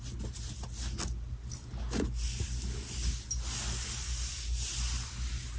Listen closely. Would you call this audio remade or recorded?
recorded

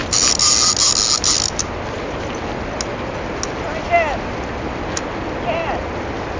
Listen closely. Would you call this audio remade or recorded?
recorded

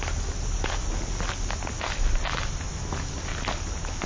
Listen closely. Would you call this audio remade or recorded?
recorded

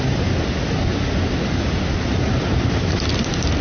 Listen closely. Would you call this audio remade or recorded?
recorded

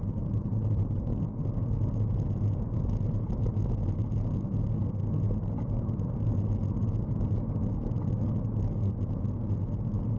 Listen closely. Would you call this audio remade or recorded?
recorded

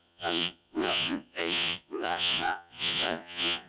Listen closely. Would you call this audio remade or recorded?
remade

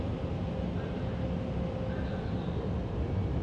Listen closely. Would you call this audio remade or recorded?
recorded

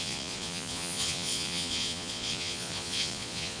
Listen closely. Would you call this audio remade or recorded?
remade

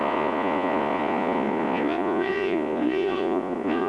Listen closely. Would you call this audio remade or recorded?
remade